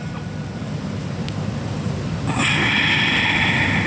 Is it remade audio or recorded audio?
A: recorded